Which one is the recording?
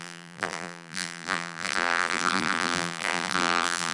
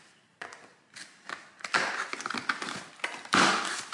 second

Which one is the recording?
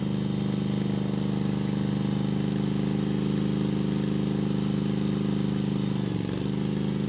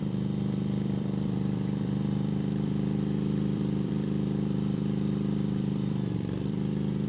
first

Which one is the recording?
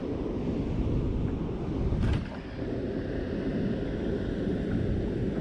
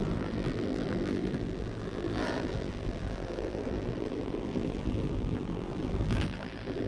first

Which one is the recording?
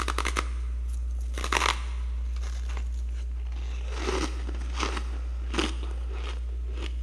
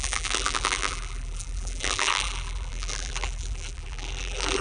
first